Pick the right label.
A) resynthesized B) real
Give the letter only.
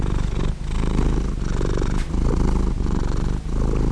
B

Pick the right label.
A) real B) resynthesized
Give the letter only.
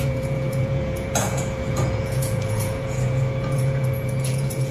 B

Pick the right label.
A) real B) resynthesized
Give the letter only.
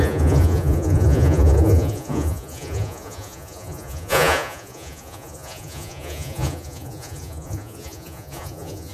B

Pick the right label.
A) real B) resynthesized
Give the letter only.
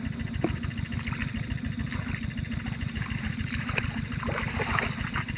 A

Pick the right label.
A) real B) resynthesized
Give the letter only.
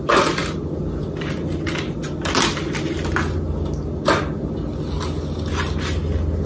A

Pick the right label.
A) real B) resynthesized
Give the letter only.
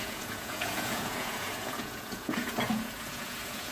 B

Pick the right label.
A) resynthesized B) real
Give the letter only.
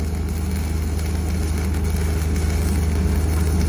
B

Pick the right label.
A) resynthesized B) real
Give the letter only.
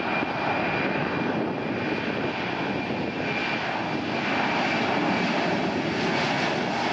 B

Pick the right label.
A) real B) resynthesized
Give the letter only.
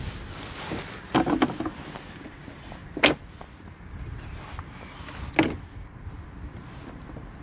A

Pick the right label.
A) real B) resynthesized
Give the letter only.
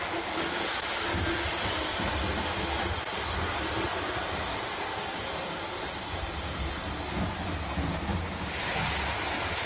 A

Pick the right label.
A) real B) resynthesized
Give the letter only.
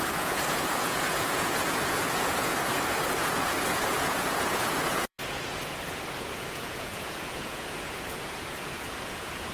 B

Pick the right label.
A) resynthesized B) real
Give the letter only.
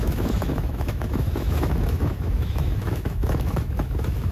A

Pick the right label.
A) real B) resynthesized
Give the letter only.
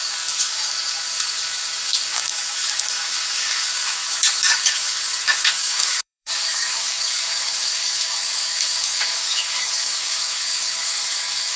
B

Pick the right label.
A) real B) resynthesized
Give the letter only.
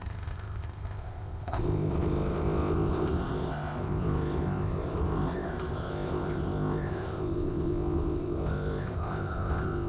B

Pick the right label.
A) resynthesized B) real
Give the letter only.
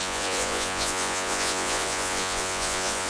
A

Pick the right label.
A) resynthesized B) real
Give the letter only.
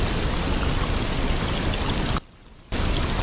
B